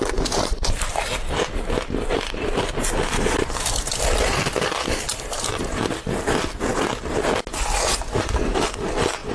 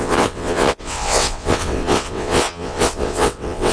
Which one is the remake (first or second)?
second